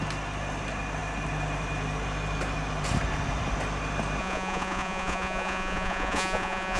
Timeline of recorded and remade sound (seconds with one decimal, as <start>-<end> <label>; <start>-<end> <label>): 0.0-4.2 recorded; 4.2-6.8 remade